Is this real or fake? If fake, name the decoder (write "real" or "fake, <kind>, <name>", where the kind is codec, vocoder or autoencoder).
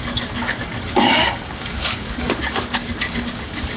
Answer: fake, codec, DAC